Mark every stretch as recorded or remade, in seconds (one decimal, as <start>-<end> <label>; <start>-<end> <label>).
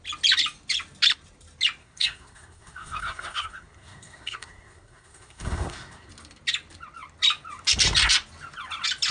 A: 0.0-1.8 recorded; 1.8-6.1 remade; 6.1-9.1 recorded